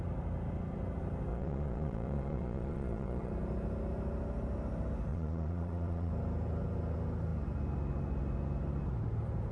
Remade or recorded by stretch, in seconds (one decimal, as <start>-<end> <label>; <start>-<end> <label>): 0.0-1.3 recorded; 1.3-3.3 remade; 3.3-5.1 recorded; 5.1-6.1 remade; 6.1-9.5 recorded